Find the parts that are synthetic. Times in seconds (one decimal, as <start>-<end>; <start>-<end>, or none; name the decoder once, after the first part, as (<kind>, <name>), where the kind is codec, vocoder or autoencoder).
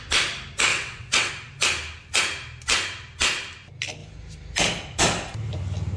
0.7-1.3 (vocoder, WaveNeXt)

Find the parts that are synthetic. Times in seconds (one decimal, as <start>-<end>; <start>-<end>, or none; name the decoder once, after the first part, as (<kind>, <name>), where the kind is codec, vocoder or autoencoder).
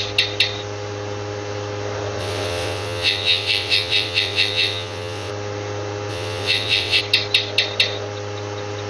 2.2-5.3 (vocoder, WaveNeXt); 6.1-7.0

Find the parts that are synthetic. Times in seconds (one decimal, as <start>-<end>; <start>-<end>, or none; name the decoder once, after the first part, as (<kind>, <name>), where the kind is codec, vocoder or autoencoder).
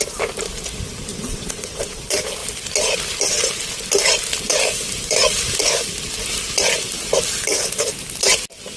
1.1-2.0 (vocoder, WaveNeXt)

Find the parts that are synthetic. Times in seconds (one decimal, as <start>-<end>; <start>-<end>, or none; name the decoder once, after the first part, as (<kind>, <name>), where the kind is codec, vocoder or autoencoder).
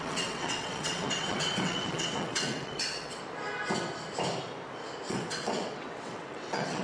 0.0-3.2 (vocoder, WaveNeXt); 5.1-6.8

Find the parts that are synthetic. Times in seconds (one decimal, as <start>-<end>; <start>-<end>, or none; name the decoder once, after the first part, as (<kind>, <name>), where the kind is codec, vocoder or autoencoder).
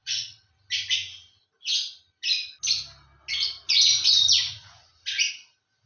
0.0-0.5 (vocoder, WaveNeXt)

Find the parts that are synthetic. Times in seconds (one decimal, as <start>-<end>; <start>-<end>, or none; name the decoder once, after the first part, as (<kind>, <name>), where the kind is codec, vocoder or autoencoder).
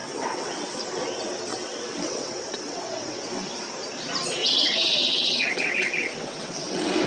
0.0-0.8 (vocoder, WaveNeXt); 1.5-3.5; 4.4-7.1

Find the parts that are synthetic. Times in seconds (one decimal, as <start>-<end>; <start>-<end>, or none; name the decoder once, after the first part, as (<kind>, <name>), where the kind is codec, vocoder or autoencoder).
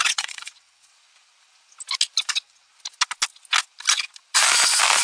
0.0-0.9 (vocoder, WaveNeXt); 2.3-2.7